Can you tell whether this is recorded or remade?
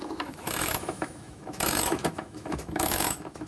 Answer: remade